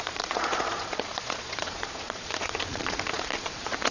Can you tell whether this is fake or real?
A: fake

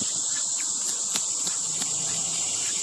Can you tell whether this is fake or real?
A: real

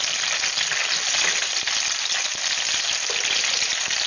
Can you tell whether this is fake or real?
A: real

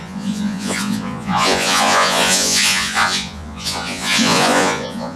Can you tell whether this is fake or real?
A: fake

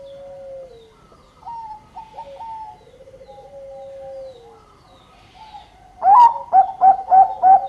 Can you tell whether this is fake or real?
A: real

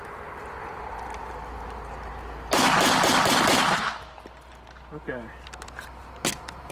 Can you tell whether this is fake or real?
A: real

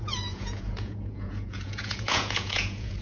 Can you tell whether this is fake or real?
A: fake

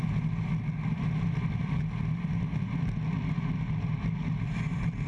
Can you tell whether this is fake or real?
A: real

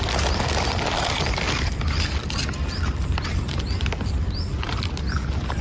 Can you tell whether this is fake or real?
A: real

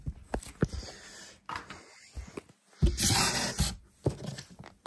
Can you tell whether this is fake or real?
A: real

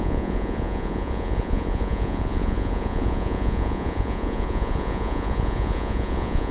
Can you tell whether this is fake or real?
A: fake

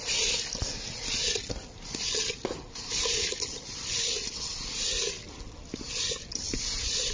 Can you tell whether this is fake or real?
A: real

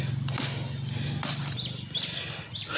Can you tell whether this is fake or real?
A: real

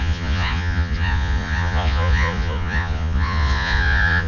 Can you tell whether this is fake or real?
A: fake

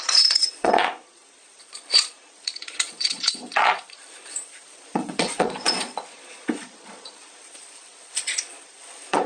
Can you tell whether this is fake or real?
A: fake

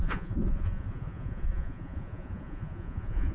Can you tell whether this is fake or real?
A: fake